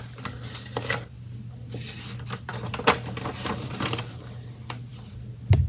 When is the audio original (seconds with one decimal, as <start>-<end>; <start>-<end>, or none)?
0.0-5.7